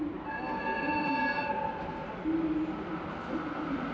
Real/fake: real